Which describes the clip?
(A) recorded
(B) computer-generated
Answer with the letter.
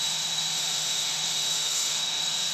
B